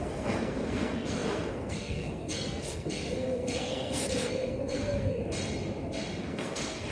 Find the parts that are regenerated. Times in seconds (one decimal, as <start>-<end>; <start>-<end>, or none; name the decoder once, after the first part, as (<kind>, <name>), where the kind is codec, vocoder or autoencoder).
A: 0.0-5.2 (codec, SNAC); 6.2-6.9